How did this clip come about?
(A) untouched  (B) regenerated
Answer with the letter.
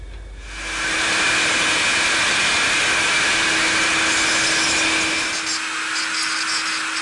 A